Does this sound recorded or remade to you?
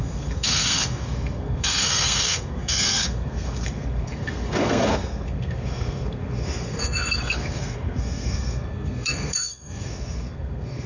remade